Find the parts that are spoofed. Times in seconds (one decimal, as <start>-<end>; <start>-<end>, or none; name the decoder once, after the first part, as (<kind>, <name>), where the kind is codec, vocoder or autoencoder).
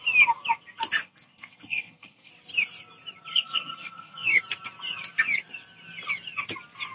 1.0-2.3 (codec, SNAC); 3.3-4.4